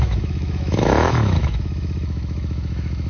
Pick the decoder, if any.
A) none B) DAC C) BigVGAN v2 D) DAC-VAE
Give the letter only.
D